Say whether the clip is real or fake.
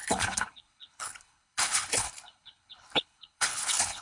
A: fake